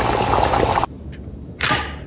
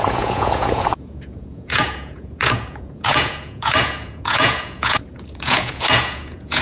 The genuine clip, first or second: first